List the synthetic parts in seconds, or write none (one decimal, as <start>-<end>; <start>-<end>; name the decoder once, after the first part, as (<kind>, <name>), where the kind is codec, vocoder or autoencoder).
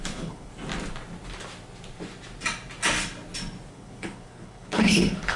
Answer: 0.0-0.5 (codec, HILCodec); 3.7-5.4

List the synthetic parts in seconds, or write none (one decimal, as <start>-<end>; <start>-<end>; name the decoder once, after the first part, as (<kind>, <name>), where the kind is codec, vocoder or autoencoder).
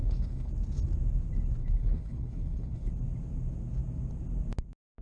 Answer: 0.0-0.5 (codec, HILCodec); 1.6-2.9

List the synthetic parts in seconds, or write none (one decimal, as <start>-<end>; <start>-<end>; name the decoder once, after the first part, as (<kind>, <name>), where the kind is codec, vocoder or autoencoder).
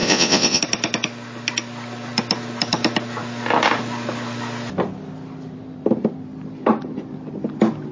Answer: 0.0-0.6 (vocoder, Vocos)